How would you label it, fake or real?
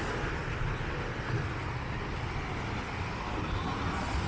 real